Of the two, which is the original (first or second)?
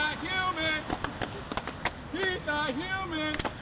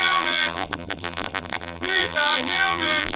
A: first